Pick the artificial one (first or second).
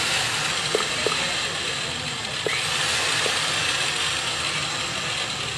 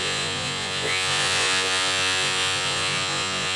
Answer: second